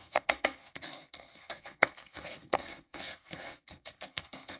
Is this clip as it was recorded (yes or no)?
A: no